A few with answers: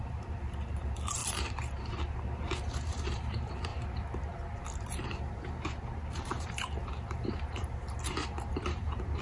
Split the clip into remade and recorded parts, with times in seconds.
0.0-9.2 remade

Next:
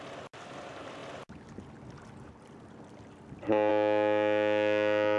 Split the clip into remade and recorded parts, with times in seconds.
0.0-5.2 recorded

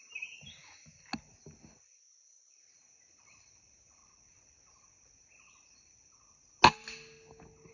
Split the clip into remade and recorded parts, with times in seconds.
0.0-0.6 remade; 0.6-2.3 recorded; 2.3-4.0 remade; 4.0-7.7 recorded

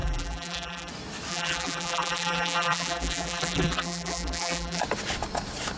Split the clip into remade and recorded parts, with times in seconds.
0.0-0.9 remade; 0.9-1.3 recorded; 1.3-4.8 remade; 4.8-5.8 recorded

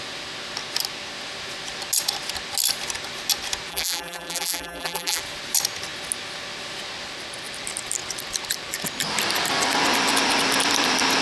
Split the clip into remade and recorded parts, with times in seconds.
0.0-3.7 recorded; 3.7-5.2 remade; 5.2-11.2 recorded

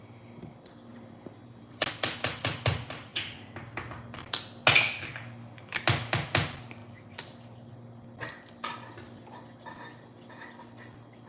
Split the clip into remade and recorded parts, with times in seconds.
0.0-0.9 recorded; 0.9-1.8 remade; 1.8-3.1 recorded; 3.1-3.8 remade; 3.8-11.3 recorded

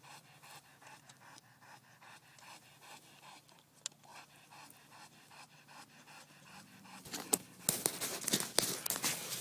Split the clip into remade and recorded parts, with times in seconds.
0.0-4.1 recorded; 4.1-5.4 remade; 5.4-9.4 recorded

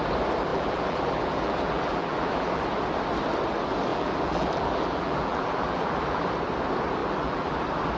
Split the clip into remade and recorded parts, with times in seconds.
0.0-0.5 recorded; 0.5-2.6 remade; 2.6-3.9 recorded; 3.9-6.3 remade; 6.3-7.0 recorded; 7.0-7.6 remade; 7.6-8.0 recorded